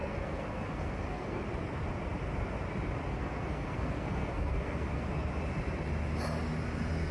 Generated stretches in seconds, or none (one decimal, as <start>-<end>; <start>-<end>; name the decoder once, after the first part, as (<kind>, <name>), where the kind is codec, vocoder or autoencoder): 0.0-1.4 (codec, SNAC); 3.1-5.1